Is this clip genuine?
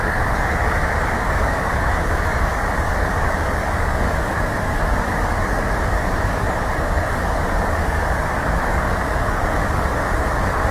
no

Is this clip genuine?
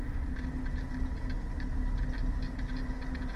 yes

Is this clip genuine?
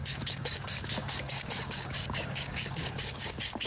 no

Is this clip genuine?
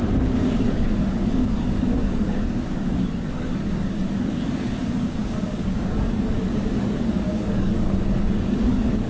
no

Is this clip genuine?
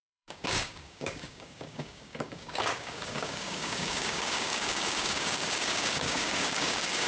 no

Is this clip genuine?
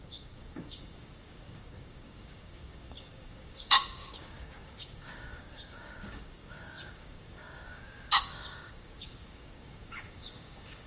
no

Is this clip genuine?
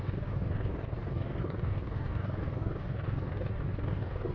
no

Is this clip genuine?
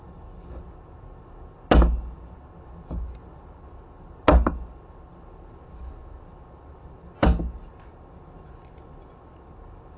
yes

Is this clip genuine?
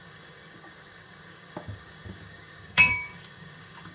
no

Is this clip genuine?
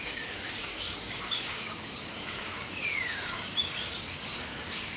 no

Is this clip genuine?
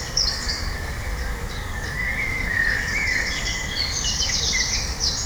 no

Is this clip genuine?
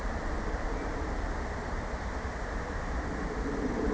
yes